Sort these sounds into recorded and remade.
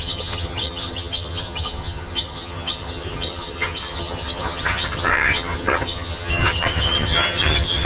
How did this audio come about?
remade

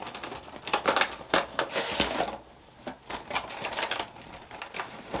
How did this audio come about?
recorded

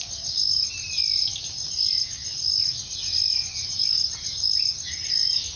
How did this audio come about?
recorded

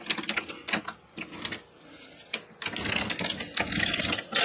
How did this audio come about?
recorded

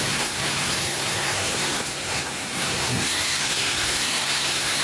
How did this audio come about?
remade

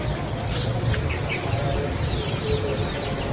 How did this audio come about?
recorded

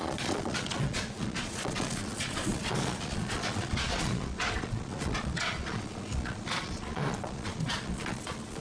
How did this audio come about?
remade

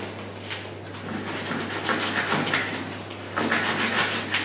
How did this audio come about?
recorded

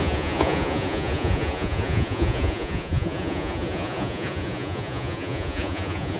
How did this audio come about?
remade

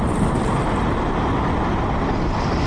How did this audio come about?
recorded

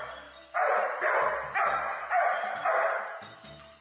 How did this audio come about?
recorded